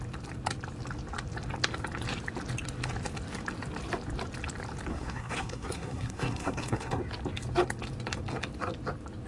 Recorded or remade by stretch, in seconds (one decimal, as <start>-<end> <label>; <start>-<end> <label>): 0.0-4.9 recorded; 4.9-7.0 remade; 7.0-9.3 recorded